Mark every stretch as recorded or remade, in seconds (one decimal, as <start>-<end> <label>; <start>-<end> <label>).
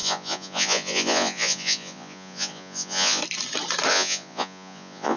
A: 0.0-3.2 remade; 3.2-3.9 recorded; 3.9-5.2 remade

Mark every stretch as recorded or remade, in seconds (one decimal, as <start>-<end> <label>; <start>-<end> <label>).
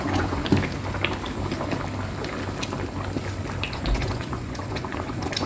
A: 0.0-0.4 remade; 0.4-3.7 recorded; 3.7-5.5 remade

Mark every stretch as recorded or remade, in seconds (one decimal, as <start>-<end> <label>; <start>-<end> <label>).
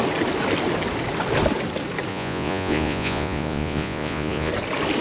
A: 0.0-2.1 recorded; 2.1-4.5 remade; 4.5-5.0 recorded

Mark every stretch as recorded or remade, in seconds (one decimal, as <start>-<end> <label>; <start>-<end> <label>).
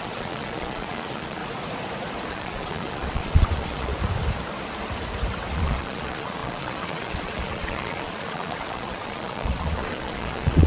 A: 0.0-1.4 remade; 1.4-2.3 recorded; 2.3-3.9 remade; 3.9-5.5 recorded; 5.5-10.7 remade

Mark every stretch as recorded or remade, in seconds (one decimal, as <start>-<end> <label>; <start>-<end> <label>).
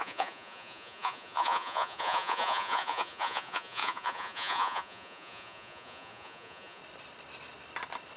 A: 0.0-6.8 remade; 6.8-8.2 recorded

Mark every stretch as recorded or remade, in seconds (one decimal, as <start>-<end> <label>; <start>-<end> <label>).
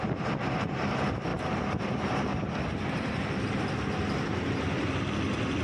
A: 0.0-5.6 recorded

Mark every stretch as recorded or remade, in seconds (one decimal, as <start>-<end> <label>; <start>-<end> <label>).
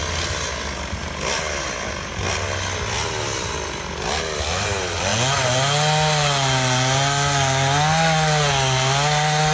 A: 0.0-9.5 recorded